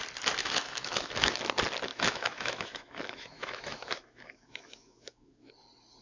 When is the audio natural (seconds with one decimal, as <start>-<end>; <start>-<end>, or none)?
0.0-0.4; 1.4-1.9; 5.5-6.0